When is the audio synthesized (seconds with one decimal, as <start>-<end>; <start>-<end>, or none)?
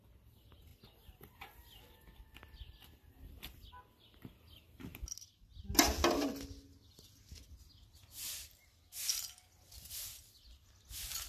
none